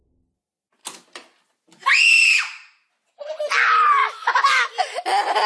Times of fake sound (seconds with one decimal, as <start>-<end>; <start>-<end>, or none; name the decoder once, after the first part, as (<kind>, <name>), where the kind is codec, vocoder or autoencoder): 4.0-4.6 (autoencoder, DAC-VAE)